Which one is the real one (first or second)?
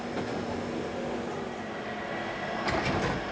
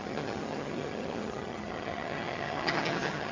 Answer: first